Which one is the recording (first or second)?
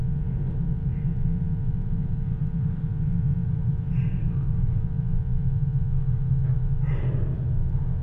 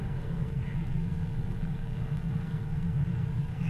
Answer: first